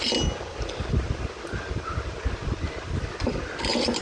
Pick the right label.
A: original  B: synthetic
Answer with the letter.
A